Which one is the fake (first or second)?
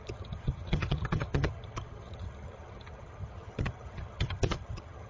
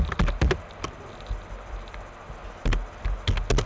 first